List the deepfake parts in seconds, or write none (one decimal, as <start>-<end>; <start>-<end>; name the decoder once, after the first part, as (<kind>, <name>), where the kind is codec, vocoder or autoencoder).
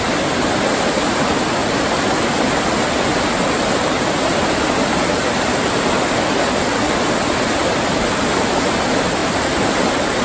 9.2-9.7 (vocoder, BigVGAN v2)